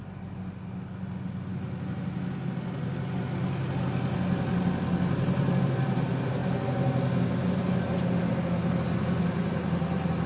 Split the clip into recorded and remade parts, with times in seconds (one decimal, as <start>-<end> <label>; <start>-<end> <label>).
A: 0.0-10.3 recorded